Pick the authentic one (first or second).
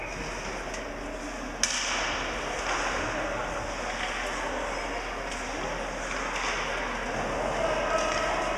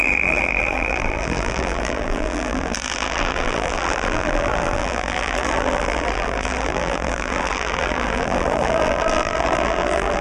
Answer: first